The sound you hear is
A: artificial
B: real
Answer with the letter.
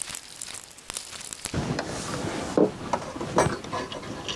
B